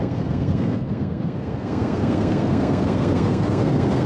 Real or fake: fake